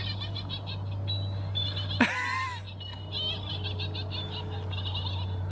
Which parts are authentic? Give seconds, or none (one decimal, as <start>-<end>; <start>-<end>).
0.0-5.5